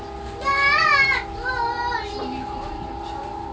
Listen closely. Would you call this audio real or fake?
real